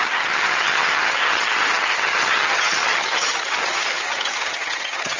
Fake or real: fake